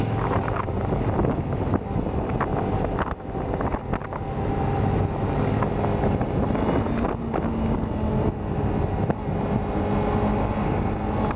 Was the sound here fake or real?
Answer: real